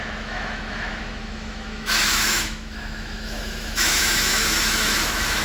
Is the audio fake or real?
fake